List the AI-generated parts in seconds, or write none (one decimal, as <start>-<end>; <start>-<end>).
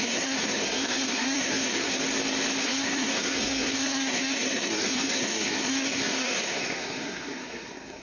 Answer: 0.0-2.0; 2.6-8.0